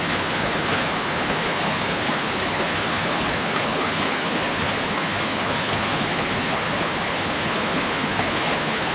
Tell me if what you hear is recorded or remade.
remade